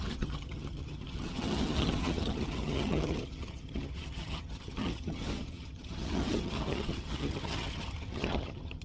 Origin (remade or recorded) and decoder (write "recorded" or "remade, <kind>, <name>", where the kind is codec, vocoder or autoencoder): remade, vocoder, HiFi-GAN